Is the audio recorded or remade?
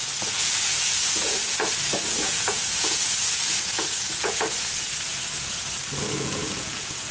remade